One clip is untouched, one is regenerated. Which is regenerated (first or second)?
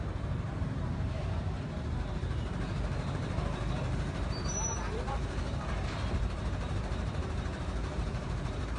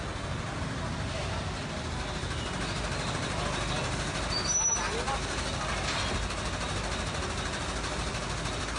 first